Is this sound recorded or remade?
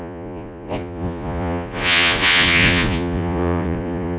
remade